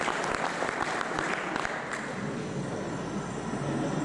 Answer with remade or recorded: recorded